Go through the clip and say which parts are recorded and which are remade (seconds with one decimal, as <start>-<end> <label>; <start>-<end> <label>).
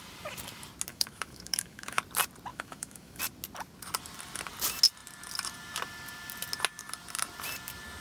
0.0-0.9 recorded; 0.9-2.0 remade; 2.0-2.5 recorded; 2.5-3.2 remade; 3.2-8.0 recorded